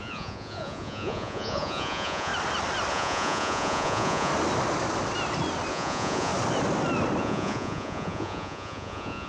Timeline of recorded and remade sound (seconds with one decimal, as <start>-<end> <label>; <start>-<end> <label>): 0.0-2.3 remade; 2.3-2.9 recorded; 2.9-4.3 remade; 4.3-5.7 recorded; 5.7-6.3 remade; 6.3-7.2 recorded; 7.2-9.3 remade